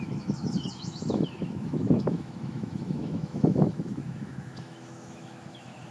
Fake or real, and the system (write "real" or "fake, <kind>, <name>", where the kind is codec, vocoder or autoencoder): fake, autoencoder, DAC-VAE